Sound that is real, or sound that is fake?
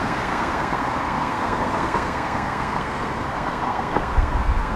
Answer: fake